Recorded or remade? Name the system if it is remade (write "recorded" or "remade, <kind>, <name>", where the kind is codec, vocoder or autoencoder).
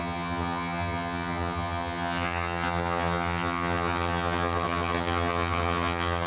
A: remade, vocoder, HiFi-GAN